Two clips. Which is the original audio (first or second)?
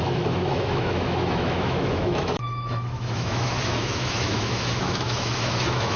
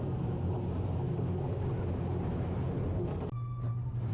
second